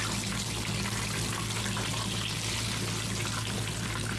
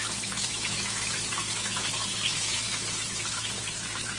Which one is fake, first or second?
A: second